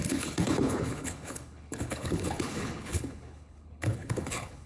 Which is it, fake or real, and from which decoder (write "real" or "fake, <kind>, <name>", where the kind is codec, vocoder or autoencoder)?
fake, codec, HILCodec